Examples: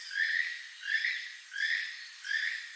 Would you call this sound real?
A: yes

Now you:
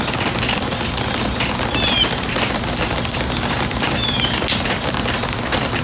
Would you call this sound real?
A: yes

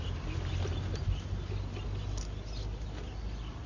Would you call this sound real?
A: yes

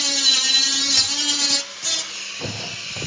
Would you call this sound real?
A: yes